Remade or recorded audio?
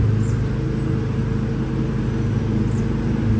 recorded